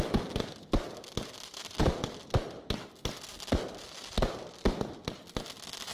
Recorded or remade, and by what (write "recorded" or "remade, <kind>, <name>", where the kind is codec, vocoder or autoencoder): recorded